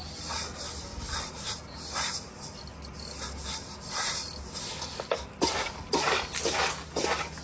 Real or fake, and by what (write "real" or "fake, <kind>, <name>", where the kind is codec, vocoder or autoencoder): real